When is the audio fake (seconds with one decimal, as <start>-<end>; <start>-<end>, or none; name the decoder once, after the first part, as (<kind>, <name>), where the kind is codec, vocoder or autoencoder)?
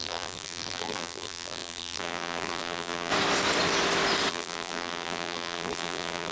0.0-3.1 (vocoder, BigVGAN v2); 4.3-6.3